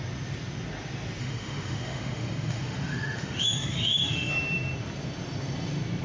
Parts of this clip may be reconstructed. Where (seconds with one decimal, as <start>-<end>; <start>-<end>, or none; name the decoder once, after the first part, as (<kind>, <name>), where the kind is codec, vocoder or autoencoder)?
1.2-4.3 (autoencoder, DAC-VAE)